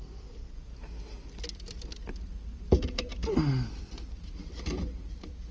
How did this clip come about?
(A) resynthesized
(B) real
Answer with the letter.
B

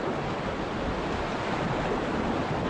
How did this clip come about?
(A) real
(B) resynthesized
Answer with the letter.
A